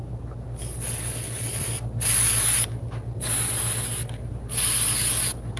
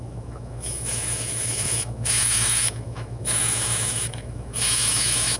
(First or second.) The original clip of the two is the first